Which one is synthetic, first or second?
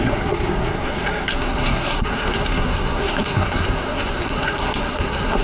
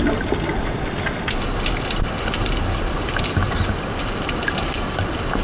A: first